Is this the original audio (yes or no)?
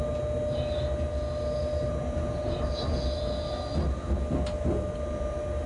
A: yes